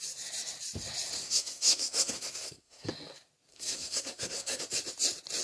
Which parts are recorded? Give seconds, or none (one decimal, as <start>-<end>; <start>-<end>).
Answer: 0.0-1.2; 2.9-3.5; 4.6-5.4